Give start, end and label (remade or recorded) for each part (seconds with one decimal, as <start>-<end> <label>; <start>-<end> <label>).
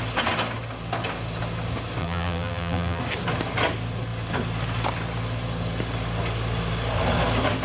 0.0-2.0 recorded; 2.0-3.0 remade; 3.0-7.6 recorded